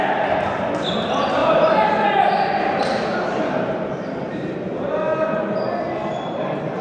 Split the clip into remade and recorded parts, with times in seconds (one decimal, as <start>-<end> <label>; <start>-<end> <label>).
0.0-1.4 recorded; 1.4-4.6 remade; 4.6-6.0 recorded; 6.0-6.8 remade